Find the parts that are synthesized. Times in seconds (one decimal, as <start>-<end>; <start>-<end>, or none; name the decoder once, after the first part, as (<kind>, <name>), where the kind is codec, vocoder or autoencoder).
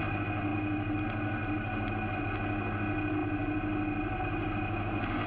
none